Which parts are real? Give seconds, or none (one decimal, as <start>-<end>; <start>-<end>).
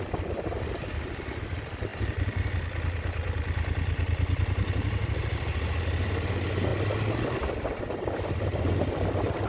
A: 0.0-9.5